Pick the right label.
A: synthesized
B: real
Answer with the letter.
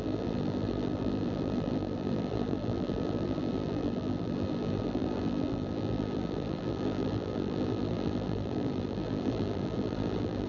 A